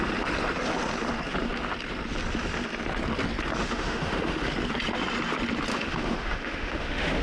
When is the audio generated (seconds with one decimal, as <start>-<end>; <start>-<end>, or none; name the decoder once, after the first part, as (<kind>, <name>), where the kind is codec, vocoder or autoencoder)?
3.6-4.5 (autoencoder, DAC-VAE); 5.7-7.2